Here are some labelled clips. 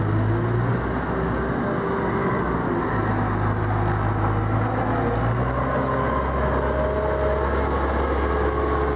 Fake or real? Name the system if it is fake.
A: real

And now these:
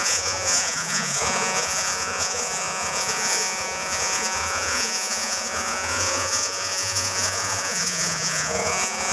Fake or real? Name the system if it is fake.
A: fake, vocoder, Vocos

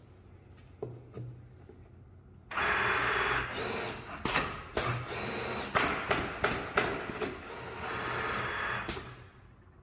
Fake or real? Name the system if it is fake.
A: real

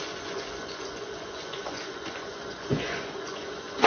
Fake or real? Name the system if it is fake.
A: fake, vocoder, Vocos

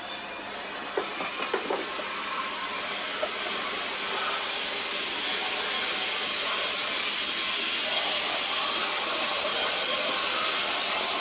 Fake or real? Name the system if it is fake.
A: real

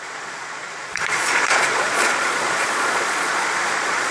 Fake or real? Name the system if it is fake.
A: fake, vocoder, Vocos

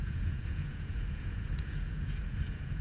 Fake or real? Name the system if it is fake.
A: fake, vocoder, Vocos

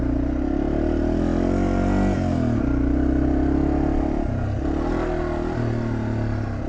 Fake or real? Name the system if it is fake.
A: real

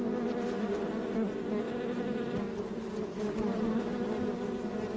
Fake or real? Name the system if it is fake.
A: real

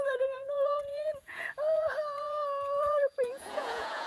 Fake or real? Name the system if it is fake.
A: fake, vocoder, Vocos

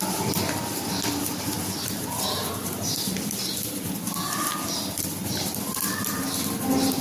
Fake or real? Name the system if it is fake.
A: real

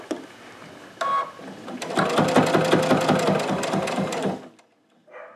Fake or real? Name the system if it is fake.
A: real